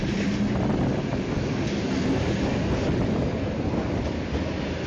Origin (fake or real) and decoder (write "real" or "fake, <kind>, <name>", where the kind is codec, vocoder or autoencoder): real